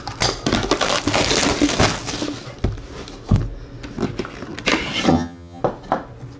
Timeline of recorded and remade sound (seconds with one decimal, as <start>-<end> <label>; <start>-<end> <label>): 0.0-5.1 recorded; 5.1-5.6 remade; 5.6-6.4 recorded